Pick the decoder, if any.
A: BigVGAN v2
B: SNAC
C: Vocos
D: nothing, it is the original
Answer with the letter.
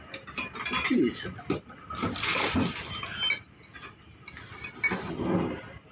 D